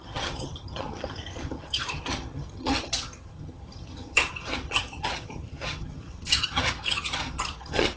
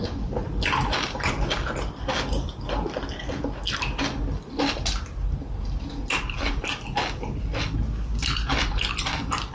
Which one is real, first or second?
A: second